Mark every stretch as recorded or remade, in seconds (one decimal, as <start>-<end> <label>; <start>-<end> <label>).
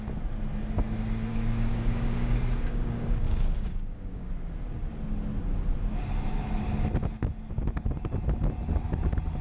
0.0-1.3 recorded; 1.3-4.3 remade; 4.3-9.4 recorded